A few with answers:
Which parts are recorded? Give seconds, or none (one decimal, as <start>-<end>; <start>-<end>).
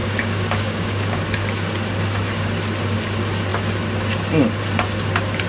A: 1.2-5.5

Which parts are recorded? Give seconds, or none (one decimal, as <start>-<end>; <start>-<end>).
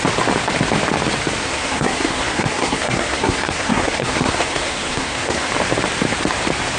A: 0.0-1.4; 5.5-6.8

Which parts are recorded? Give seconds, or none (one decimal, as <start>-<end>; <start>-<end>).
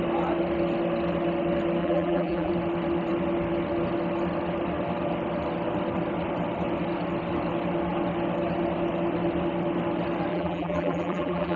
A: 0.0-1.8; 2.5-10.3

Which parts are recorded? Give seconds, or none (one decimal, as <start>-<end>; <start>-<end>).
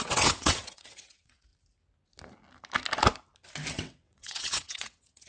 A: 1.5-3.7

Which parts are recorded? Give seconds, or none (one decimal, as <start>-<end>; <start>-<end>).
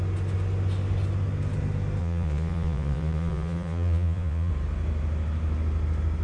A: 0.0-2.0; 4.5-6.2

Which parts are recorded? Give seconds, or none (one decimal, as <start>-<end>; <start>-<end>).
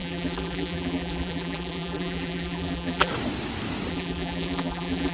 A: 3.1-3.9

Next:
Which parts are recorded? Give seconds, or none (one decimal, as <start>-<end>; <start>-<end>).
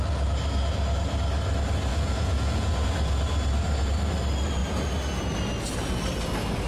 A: 0.0-1.9; 2.9-6.7